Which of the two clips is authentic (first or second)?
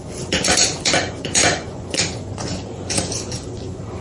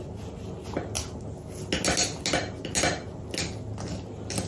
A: second